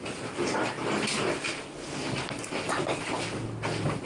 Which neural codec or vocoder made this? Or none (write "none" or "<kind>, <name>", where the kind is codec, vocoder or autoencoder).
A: none